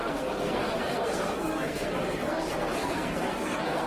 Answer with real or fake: fake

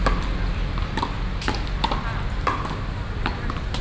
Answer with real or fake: real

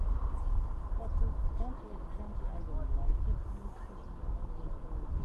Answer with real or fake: real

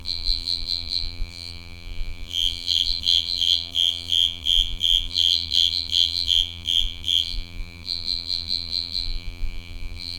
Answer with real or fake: fake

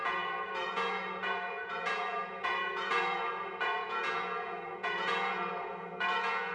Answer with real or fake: fake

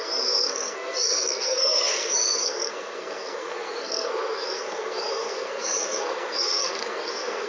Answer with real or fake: fake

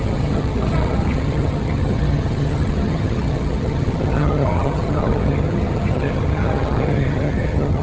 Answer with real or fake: fake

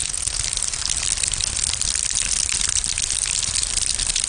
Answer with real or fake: real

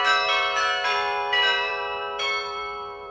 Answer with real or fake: fake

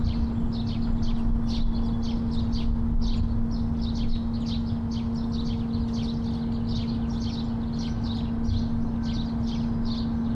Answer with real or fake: real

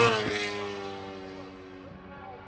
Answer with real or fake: real